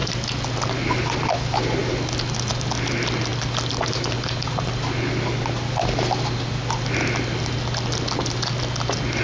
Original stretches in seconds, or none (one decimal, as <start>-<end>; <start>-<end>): 0.0-9.2